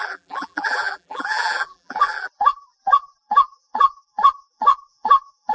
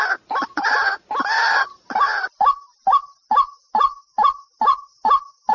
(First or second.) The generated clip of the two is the first